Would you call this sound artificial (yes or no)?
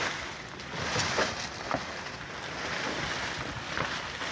no